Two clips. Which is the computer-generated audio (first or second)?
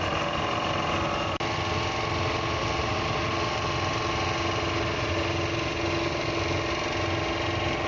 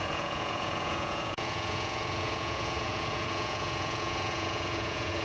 second